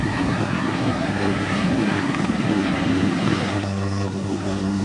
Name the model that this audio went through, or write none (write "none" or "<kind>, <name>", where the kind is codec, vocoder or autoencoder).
codec, SNAC